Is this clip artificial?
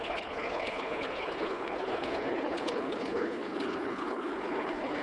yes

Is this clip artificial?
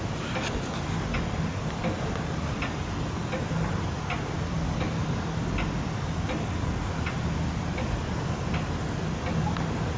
no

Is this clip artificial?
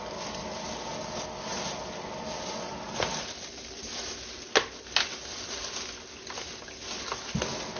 no